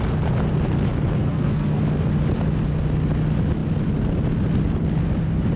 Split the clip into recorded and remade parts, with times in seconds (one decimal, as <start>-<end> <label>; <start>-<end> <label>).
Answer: 0.0-1.2 recorded; 1.2-1.8 remade; 1.8-5.6 recorded